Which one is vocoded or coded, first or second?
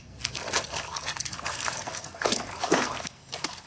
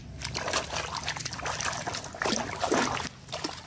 first